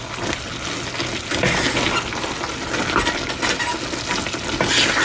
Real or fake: real